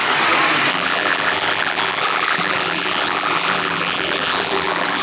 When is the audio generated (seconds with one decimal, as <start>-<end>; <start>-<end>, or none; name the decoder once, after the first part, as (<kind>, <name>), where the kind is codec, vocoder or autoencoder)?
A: 0.7-5.0 (vocoder, BigVGAN v2)